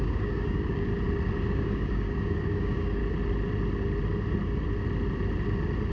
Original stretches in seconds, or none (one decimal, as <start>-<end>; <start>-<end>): 0.9-1.5; 3.0-5.9